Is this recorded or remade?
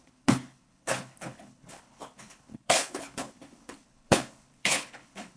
remade